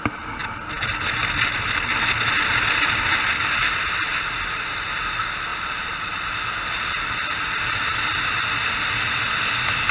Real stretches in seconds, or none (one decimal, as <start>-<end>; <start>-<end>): 0.0-5.5; 6.1-9.9